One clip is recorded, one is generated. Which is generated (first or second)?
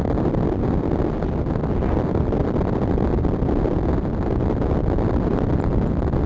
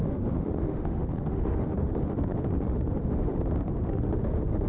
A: second